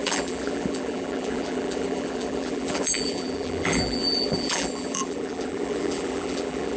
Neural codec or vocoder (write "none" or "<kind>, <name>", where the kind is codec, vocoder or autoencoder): vocoder, BigVGAN v2